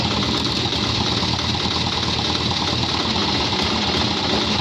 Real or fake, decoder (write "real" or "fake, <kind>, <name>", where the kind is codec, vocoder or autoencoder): real